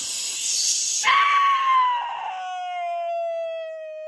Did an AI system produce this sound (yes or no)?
no